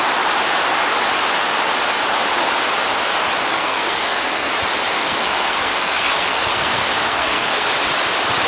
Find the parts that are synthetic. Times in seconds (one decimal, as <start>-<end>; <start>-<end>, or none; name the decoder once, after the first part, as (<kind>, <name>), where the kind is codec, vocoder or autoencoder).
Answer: 3.5-4.5 (codec, SNAC); 5.0-7.7